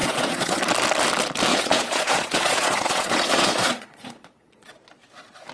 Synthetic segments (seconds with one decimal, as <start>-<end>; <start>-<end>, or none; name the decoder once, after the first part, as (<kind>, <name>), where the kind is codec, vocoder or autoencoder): 0.0-0.6 (vocoder, Vocos); 1.5-4.7